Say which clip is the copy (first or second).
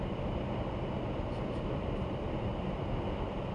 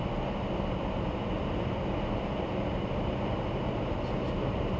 first